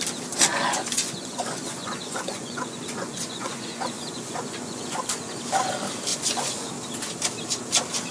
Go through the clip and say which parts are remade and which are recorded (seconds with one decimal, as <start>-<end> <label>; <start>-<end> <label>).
0.0-0.5 recorded; 0.5-5.4 remade; 5.4-6.1 recorded; 6.1-6.7 remade; 6.7-8.1 recorded